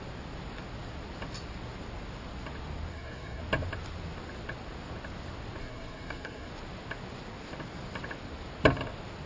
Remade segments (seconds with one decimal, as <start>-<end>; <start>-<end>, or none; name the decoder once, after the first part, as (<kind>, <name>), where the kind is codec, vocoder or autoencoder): 2.9-3.4 (codec, SNAC); 5.6-6.5